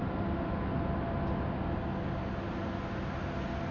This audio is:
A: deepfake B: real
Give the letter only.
B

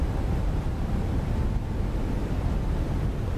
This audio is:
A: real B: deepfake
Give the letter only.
A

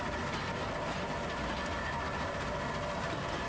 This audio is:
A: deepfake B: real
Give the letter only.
B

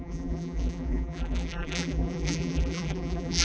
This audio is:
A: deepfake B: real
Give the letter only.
A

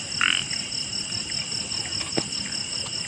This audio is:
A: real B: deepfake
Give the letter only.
A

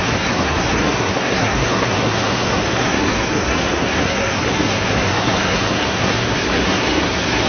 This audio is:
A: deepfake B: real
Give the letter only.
A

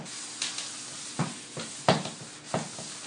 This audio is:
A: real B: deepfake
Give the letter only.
A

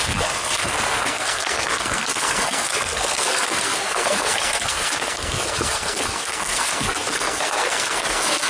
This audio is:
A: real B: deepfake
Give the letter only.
B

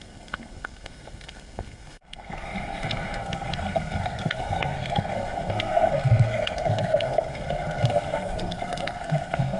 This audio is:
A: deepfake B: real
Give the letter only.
A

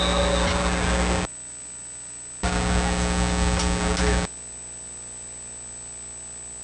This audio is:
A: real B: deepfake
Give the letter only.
A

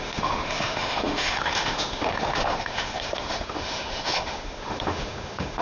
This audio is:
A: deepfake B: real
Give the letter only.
A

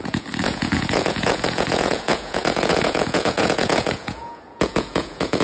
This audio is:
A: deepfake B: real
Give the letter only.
A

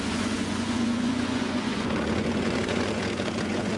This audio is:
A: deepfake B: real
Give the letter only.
A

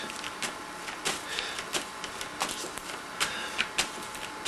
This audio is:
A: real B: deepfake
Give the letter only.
A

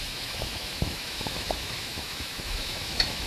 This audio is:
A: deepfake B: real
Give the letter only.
A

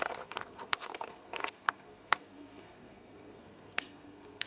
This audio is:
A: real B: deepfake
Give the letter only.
B